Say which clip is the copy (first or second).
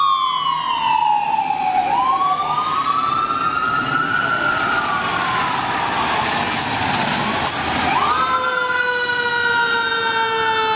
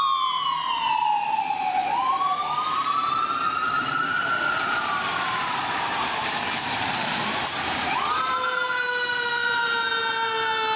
second